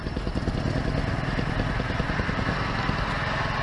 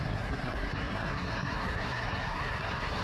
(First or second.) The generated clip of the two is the second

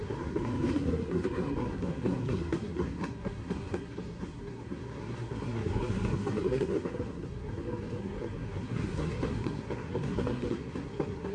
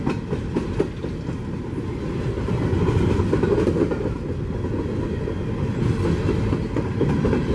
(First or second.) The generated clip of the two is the first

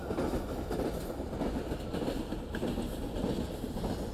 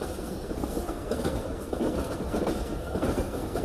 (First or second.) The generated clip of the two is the second